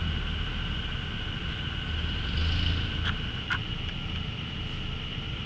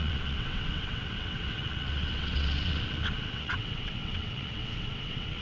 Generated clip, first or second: second